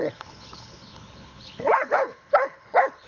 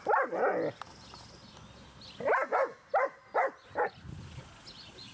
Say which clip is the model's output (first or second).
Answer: first